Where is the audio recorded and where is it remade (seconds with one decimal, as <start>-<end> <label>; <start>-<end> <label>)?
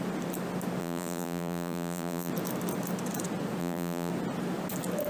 0.0-0.8 recorded; 0.8-2.3 remade; 2.3-3.6 recorded; 3.6-4.1 remade; 4.1-5.1 recorded